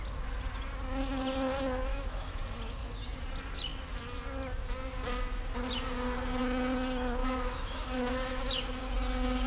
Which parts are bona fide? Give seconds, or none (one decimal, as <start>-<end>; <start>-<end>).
0.0-1.9; 2.4-7.2; 8.4-9.5